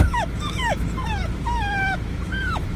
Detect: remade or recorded remade